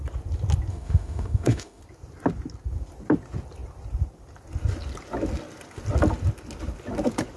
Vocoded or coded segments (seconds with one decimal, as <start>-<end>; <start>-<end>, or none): 0.7-1.8